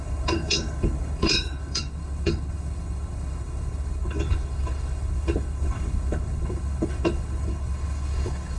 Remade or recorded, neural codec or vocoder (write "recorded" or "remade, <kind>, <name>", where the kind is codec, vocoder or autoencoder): remade, codec, HILCodec